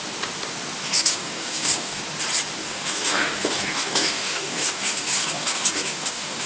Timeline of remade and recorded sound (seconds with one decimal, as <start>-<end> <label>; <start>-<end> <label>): 0.0-0.8 recorded; 0.8-2.0 remade; 2.0-2.6 recorded; 2.6-6.5 remade